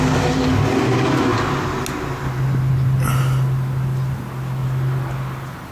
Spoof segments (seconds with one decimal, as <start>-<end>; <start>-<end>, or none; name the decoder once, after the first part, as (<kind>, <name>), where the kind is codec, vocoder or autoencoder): none

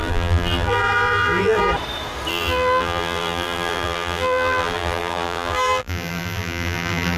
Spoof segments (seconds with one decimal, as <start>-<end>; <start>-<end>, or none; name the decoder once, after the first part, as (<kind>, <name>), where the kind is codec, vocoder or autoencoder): 0.0-1.6 (vocoder, BigVGAN v2); 2.3-7.2

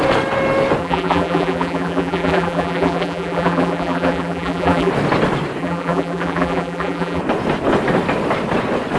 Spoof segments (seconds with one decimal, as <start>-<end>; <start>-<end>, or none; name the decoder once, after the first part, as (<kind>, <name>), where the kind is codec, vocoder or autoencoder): 0.8-4.9 (vocoder, BigVGAN v2); 5.6-7.2

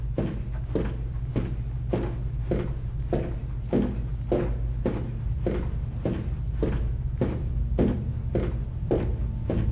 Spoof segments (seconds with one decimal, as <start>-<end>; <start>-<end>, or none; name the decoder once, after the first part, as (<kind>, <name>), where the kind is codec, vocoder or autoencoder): none

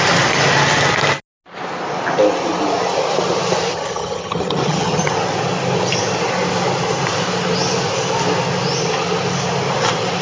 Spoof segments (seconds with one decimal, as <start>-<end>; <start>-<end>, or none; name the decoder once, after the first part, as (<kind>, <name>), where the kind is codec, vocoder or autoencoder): 3.7-5.1 (vocoder, HiFi-GAN)

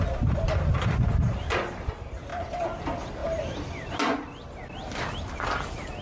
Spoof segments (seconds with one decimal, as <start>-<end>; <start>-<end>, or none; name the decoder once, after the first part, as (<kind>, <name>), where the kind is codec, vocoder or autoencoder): none